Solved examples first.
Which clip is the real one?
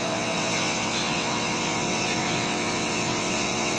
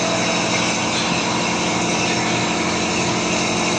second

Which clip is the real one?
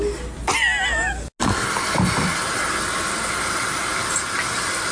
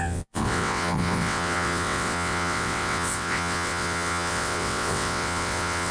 first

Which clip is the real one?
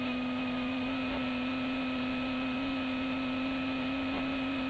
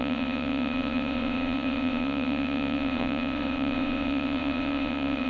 first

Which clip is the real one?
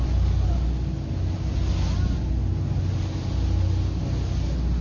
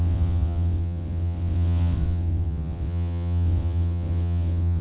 first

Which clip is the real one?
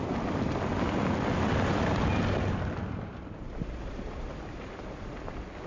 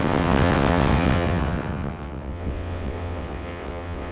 first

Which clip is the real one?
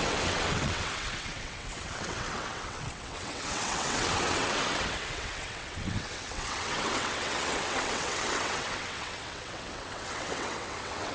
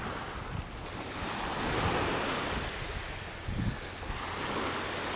second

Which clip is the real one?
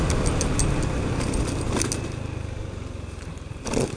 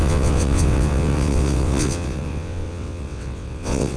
first